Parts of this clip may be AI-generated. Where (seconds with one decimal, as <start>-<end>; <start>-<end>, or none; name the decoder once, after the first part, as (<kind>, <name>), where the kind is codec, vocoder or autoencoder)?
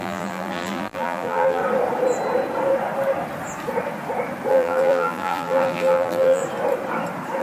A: 0.0-1.6 (vocoder, BigVGAN v2); 4.5-6.4